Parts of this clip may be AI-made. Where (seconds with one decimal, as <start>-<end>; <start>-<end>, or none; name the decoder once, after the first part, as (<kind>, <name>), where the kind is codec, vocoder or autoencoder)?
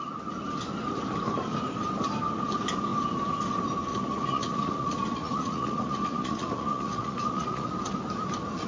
3.9-7.7 (vocoder, Vocos)